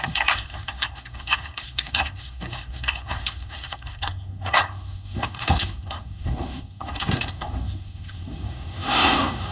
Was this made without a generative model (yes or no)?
no